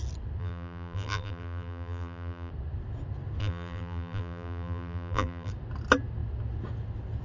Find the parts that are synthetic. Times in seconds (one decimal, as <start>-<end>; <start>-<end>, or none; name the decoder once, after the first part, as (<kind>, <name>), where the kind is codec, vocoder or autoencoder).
0.4-2.5 (vocoder, BigVGAN v2); 3.4-5.5